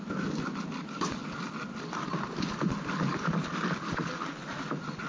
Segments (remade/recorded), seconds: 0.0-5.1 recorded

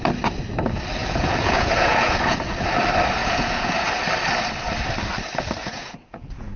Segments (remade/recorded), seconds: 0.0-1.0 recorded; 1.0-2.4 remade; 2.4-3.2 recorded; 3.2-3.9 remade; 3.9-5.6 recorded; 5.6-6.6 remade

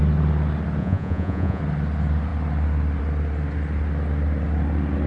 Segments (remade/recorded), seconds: 0.0-0.8 recorded; 0.8-1.6 remade; 1.6-5.1 recorded

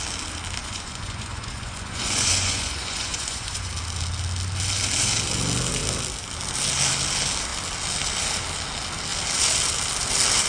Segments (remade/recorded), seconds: 0.0-0.6 recorded; 0.6-3.7 remade; 3.7-10.5 recorded

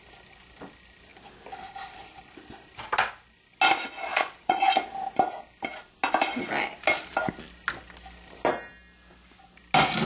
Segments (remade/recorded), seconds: 0.0-4.1 recorded; 4.1-4.7 remade; 4.7-10.1 recorded

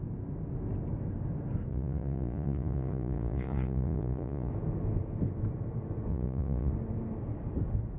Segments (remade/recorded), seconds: 0.0-1.7 recorded; 1.7-4.5 remade; 4.5-6.1 recorded; 6.1-6.7 remade; 6.7-8.0 recorded

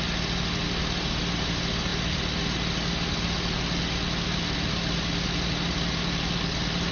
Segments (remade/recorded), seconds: 0.0-6.9 recorded

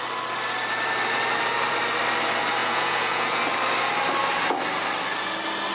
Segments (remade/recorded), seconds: 0.0-2.6 recorded; 2.6-3.4 remade; 3.4-5.7 recorded